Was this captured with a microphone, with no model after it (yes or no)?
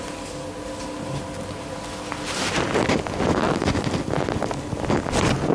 yes